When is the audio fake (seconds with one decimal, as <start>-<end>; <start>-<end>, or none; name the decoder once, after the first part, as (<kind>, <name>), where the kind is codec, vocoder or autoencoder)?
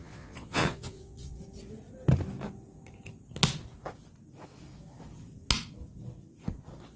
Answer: 0.0-1.4 (vocoder, Vocos)